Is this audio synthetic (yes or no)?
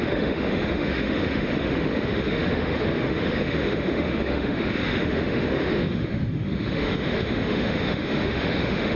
yes